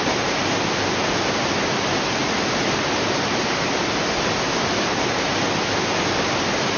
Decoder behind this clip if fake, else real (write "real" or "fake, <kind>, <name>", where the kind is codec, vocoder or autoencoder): real